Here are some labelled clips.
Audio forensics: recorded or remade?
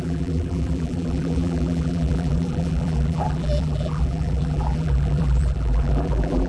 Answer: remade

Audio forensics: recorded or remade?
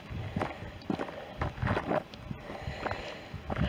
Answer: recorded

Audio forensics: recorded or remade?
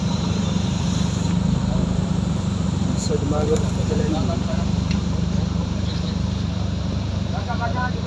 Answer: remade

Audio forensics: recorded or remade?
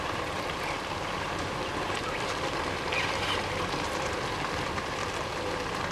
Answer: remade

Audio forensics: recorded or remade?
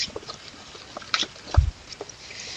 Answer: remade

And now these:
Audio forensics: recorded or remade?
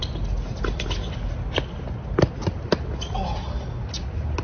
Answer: recorded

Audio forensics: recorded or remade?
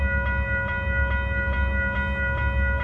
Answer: recorded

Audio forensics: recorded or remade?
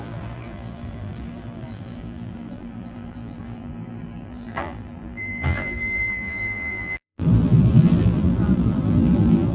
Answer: remade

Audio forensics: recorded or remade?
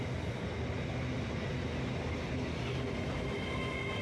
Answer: recorded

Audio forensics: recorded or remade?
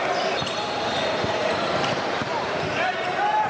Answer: remade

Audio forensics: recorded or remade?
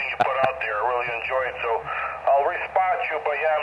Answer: recorded